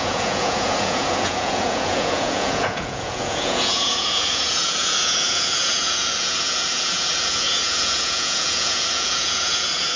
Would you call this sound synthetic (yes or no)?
yes